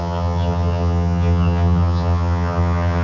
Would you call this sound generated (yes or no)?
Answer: yes